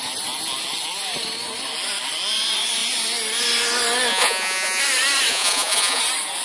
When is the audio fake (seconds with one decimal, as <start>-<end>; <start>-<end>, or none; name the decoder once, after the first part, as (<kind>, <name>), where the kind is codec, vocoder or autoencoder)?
4.1-4.8 (vocoder, Vocos); 5.3-6.0